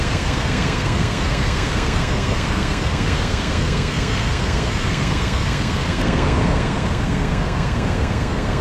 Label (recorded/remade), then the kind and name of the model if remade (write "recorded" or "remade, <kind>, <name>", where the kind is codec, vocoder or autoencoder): remade, codec, SNAC